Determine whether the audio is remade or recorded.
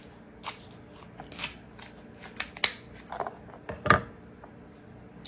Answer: recorded